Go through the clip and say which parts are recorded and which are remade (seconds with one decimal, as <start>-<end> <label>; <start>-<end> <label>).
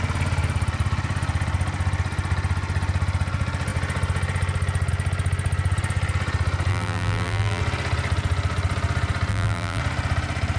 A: 0.0-6.7 recorded; 6.7-7.6 remade; 7.6-9.3 recorded; 9.3-9.8 remade; 9.8-10.6 recorded